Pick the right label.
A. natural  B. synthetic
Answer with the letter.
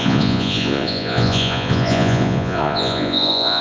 B